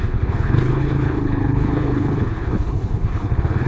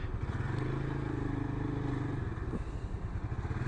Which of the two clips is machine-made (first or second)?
first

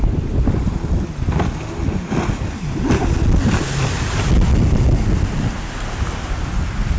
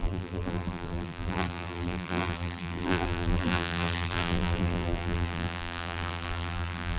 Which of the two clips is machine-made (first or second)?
second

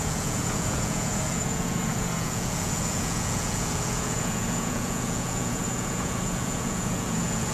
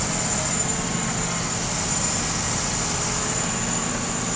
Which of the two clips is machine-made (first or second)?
first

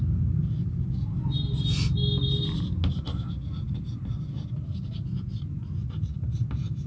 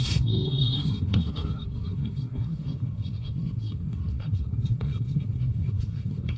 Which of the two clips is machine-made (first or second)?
second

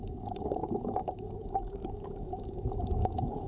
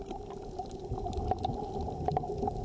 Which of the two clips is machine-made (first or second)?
first